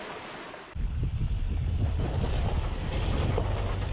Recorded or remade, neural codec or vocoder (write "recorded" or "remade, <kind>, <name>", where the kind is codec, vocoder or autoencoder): recorded